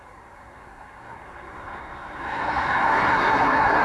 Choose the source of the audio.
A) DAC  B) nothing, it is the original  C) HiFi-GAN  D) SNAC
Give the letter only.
D